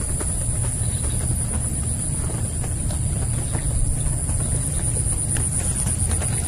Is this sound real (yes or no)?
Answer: yes